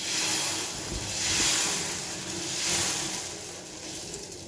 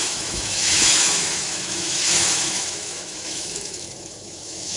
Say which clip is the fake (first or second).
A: second